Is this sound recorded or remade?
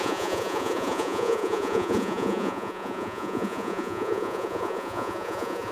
remade